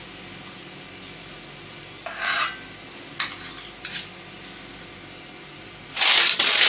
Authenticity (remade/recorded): recorded